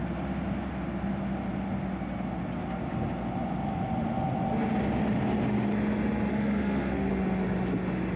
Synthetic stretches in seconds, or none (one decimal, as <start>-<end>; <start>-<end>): 6.3-7.1